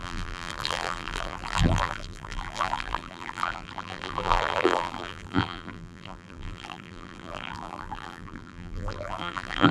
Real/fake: fake